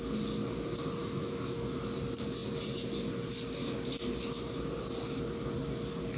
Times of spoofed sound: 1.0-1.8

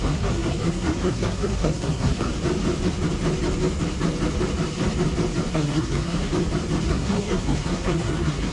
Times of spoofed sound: 0.0-2.3; 5.5-6.3; 6.8-8.5

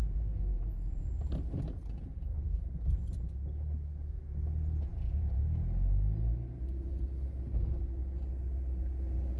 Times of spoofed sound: 0.0-1.1; 4.9-5.4